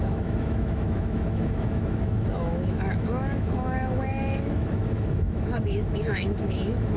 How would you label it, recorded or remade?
remade